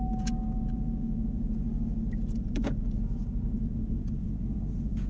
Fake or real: fake